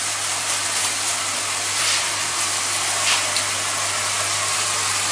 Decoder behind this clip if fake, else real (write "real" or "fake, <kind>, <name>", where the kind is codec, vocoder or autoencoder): real